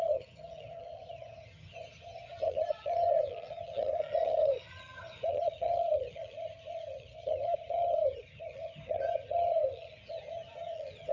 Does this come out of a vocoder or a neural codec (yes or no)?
yes